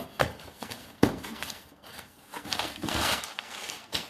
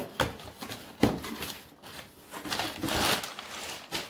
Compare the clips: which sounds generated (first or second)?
first